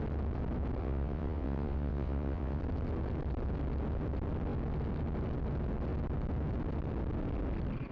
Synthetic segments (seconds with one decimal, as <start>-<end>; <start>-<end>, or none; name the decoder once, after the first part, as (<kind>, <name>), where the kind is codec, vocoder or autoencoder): 0.8-2.6 (vocoder, WaveNeXt)